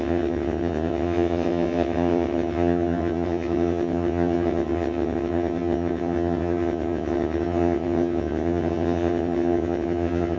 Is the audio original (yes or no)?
no